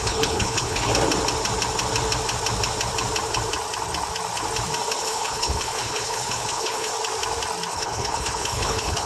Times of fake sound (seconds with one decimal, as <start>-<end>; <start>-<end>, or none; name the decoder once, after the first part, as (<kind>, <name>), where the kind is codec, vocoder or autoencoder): 0.0-0.9 (codec, HILCodec); 5.0-6.9; 7.7-9.1